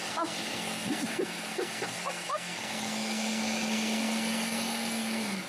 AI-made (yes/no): yes